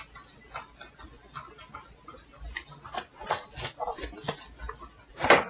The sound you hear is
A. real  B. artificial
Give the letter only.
A